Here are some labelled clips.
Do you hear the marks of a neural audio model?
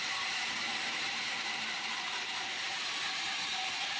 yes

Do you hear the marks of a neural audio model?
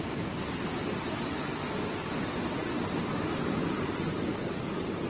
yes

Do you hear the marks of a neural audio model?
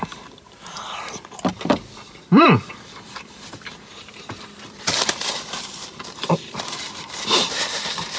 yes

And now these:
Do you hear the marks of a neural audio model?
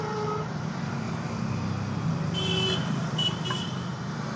yes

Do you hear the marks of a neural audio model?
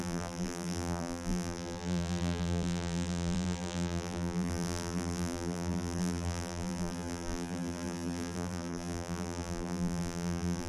yes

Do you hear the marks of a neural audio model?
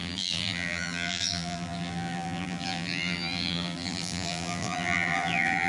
yes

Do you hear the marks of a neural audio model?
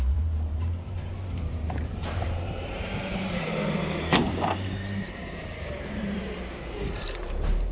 yes